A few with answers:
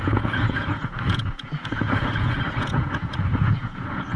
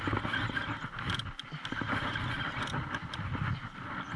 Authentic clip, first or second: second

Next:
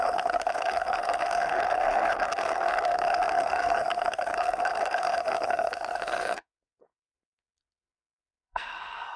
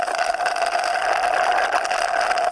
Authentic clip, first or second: second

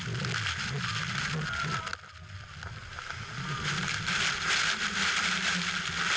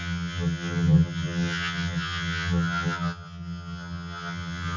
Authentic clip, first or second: first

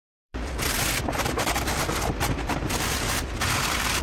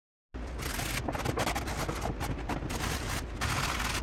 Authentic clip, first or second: second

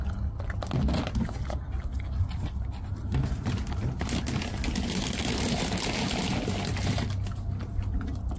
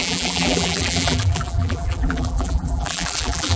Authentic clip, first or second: first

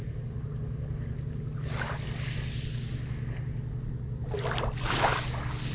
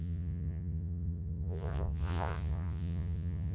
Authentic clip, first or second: first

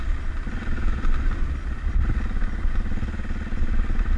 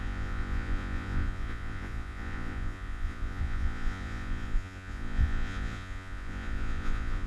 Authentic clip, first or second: first